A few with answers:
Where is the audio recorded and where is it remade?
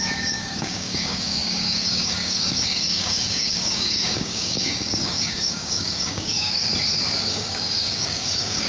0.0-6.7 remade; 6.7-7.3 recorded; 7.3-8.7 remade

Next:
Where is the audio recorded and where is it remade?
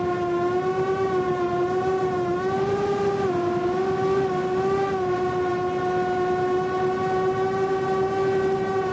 0.0-8.9 recorded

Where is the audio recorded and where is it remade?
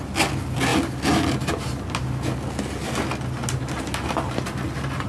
0.0-5.1 recorded